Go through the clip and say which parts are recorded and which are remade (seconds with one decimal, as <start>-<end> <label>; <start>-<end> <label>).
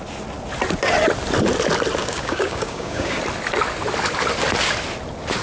0.0-2.0 recorded; 2.0-3.2 remade; 3.2-5.4 recorded